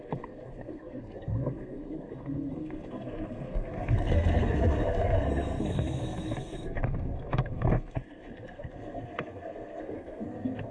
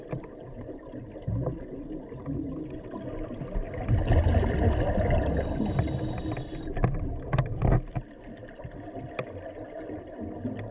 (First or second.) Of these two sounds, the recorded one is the second